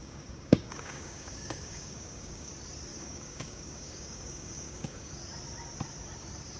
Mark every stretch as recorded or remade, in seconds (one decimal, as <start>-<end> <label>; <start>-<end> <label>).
0.0-2.5 remade; 2.5-2.9 recorded; 2.9-5.1 remade; 5.1-6.6 recorded